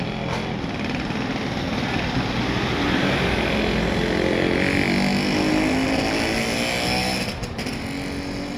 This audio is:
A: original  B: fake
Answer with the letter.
A